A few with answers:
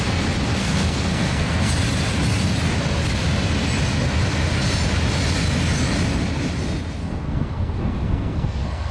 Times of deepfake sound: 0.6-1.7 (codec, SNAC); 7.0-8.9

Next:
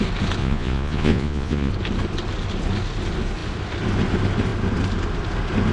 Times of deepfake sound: 0.4-1.7 (vocoder, Vocos)

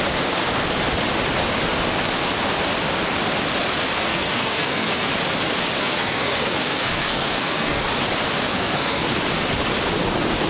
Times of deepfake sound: 4.1-5.1 (codec, SNAC); 5.8-7.8; 8.5-9.0

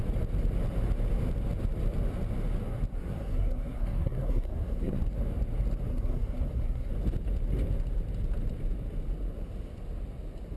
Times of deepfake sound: 2.9-5.0 (codec, SNAC); 5.9-6.9